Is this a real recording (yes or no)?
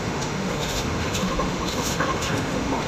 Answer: no